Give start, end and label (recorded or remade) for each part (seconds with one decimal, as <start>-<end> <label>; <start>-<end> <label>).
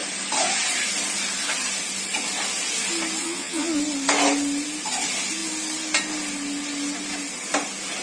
0.0-3.2 recorded; 3.2-3.8 remade; 3.8-8.0 recorded